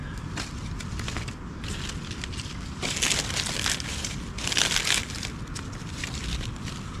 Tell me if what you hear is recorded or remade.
recorded